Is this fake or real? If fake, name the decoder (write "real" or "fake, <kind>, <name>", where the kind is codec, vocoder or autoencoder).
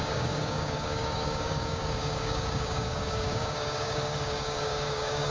fake, codec, DAC